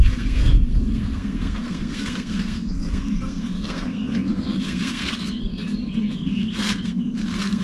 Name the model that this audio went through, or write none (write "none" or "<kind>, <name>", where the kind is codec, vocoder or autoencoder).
codec, SNAC